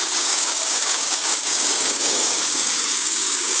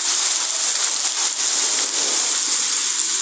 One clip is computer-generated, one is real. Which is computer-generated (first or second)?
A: first